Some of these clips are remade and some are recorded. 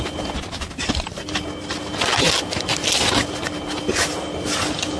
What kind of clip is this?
recorded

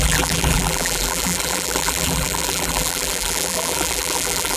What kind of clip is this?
remade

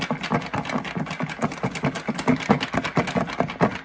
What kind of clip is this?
recorded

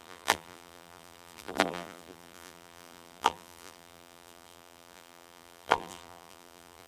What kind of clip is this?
remade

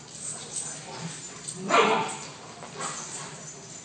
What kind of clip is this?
recorded